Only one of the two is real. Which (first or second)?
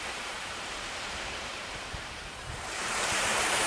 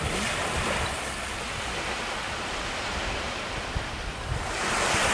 second